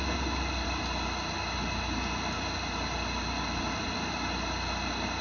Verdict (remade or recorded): recorded